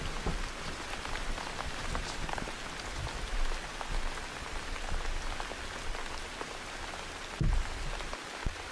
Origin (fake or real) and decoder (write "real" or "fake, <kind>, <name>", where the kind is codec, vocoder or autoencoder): real